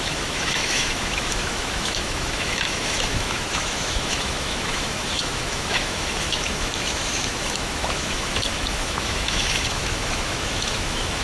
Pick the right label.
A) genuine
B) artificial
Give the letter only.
B